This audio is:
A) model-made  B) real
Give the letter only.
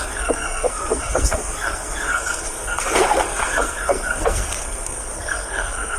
A